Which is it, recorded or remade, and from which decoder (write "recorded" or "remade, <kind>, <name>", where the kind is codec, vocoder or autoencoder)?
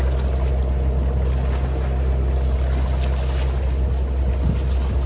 recorded